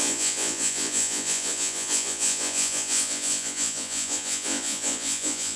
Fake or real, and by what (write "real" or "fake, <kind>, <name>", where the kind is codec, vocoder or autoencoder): fake, vocoder, Vocos